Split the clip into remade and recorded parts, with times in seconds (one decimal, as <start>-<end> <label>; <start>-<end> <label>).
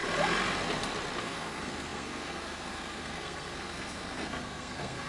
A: 0.0-1.2 recorded; 1.2-5.1 remade